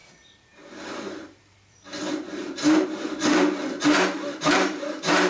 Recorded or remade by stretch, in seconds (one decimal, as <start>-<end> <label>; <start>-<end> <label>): 0.0-5.3 remade